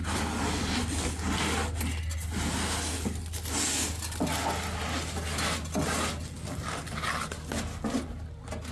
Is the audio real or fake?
real